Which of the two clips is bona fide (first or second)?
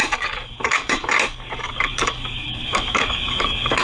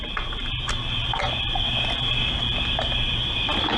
second